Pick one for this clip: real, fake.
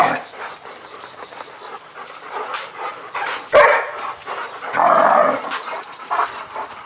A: real